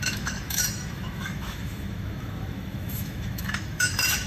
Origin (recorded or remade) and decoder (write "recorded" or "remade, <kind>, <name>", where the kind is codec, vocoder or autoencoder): remade, autoencoder, DAC-VAE